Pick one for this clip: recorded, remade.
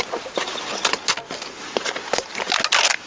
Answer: recorded